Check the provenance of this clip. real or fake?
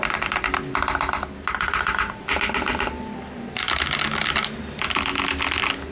real